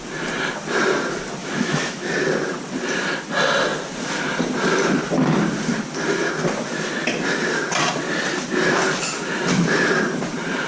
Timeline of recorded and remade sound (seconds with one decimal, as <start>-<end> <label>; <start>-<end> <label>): 0.0-1.4 recorded; 1.4-2.1 remade; 2.1-10.7 recorded